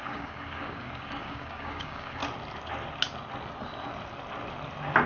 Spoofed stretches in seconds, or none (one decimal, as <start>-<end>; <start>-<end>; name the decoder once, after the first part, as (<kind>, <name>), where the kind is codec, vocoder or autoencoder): 0.0-2.2 (codec, DAC)